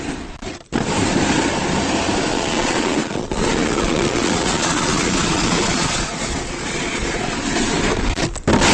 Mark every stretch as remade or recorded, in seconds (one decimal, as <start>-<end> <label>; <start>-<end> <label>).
0.0-2.3 recorded; 2.3-7.3 remade; 7.3-8.7 recorded